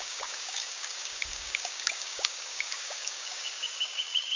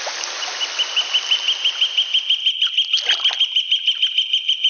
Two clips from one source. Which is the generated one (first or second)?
first